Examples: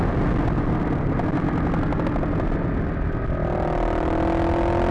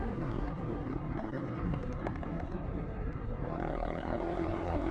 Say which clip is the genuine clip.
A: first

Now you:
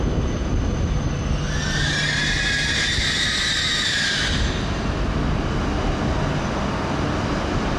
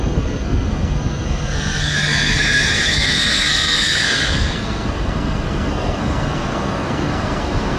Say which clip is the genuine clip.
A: first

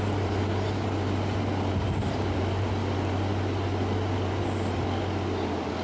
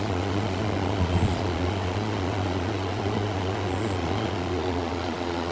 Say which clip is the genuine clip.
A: first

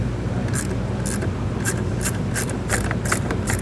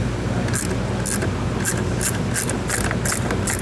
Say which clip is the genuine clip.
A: second